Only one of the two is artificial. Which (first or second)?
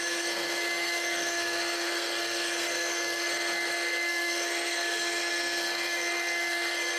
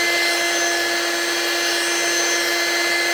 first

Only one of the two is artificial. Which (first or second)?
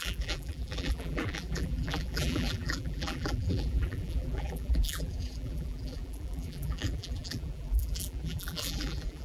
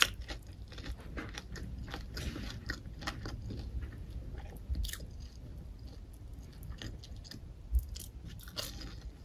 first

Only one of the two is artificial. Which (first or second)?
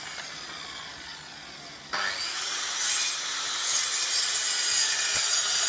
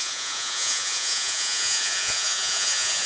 second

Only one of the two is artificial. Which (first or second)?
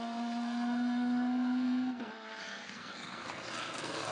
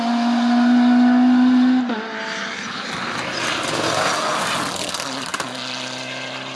first